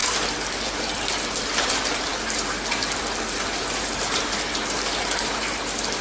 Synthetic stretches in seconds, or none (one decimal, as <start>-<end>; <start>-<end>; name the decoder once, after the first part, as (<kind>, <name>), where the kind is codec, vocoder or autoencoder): none